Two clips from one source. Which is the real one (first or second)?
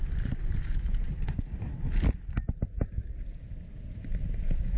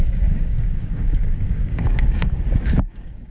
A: first